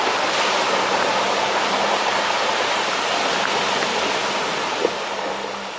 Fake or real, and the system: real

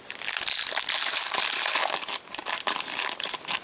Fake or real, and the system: real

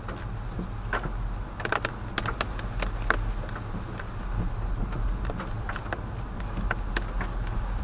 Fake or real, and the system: real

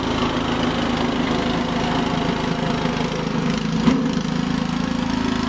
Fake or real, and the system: real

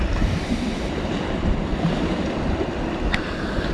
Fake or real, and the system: real